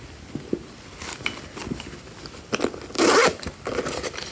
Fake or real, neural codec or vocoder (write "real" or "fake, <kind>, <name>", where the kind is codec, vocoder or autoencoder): real